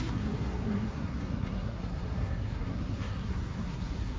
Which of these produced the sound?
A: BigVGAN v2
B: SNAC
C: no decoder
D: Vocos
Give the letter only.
B